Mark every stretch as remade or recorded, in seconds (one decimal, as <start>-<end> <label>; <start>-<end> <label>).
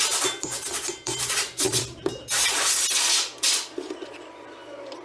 0.0-2.1 remade; 2.1-4.2 recorded; 4.2-5.0 remade